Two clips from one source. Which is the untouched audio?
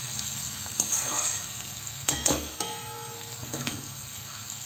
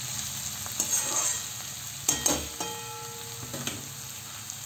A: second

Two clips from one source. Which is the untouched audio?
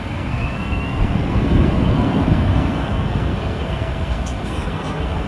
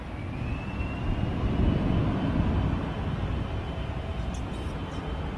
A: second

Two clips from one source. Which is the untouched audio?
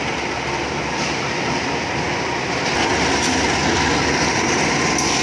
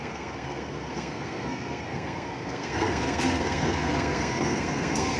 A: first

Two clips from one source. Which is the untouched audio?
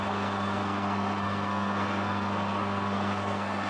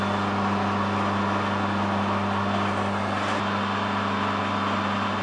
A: second